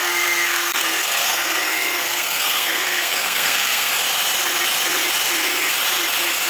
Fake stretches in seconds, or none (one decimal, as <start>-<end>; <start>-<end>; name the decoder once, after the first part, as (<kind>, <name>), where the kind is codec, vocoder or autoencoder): 0.0-3.9 (codec, SNAC)